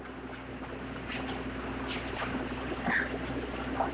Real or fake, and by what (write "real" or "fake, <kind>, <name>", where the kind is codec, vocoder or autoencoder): real